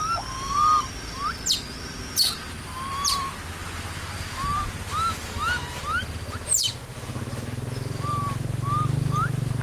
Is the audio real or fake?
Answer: real